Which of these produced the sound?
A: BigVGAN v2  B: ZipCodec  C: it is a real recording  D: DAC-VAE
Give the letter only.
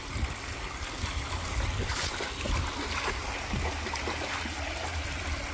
C